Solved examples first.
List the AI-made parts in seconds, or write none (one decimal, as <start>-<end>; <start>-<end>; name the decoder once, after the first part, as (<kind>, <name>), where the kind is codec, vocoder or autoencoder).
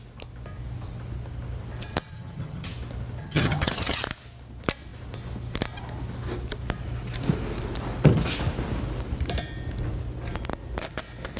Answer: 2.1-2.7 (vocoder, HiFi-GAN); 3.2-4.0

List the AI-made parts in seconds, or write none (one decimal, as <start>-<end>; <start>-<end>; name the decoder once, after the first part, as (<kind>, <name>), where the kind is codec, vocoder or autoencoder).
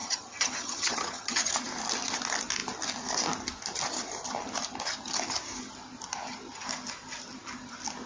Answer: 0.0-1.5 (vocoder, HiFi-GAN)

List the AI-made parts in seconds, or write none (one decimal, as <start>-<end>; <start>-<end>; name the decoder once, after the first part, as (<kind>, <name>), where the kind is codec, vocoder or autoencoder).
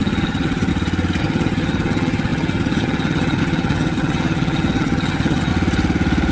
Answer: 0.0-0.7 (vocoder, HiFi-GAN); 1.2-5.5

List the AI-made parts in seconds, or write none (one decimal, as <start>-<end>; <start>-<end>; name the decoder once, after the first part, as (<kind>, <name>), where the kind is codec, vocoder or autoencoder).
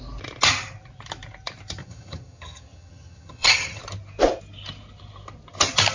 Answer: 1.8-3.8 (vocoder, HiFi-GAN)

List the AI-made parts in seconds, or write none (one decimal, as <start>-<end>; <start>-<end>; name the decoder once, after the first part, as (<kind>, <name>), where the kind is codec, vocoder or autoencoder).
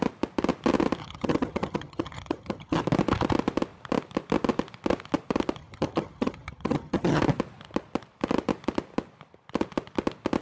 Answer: 1.0-2.8 (vocoder, HiFi-GAN); 5.6-7.2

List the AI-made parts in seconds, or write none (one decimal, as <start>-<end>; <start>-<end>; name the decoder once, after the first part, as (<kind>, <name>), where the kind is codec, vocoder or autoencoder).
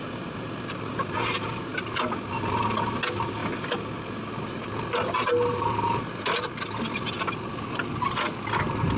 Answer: none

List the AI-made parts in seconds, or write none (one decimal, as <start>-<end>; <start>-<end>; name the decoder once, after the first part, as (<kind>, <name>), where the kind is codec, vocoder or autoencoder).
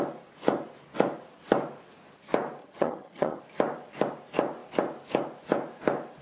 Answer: 2.6-3.4 (vocoder, HiFi-GAN)